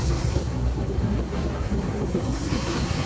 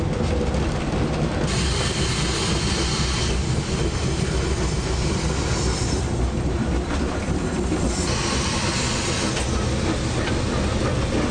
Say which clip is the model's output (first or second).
first